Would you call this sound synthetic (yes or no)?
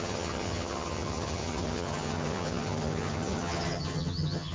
yes